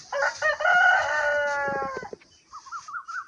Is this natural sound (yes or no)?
yes